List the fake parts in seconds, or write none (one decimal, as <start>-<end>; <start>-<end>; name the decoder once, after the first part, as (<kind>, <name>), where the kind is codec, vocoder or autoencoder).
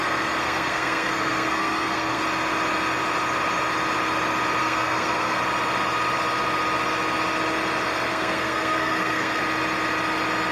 0.4-2.2 (codec, SNAC); 4.6-5.4; 8.1-9.4